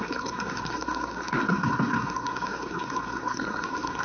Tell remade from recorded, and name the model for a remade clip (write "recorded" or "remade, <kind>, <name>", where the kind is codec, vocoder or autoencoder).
remade, codec, SNAC